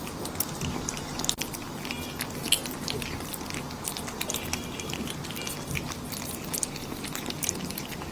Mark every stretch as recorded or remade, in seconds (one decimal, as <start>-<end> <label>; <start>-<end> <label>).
0.0-8.1 recorded